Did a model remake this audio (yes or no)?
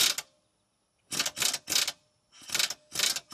no